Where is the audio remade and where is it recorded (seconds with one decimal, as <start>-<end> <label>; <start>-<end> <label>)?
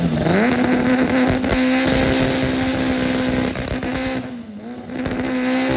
0.0-5.8 recorded